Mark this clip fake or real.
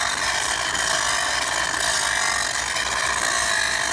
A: real